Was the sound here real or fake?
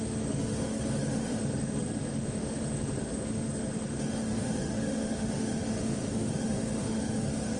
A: fake